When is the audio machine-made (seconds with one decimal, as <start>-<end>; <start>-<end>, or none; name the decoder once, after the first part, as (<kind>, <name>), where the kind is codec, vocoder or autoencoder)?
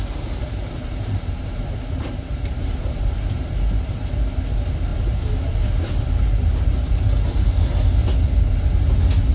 0.0-4.1 (vocoder, BigVGAN v2); 4.9-5.5